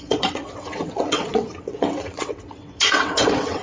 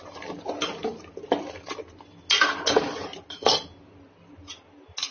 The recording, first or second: second